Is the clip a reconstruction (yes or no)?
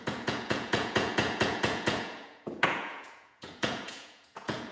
yes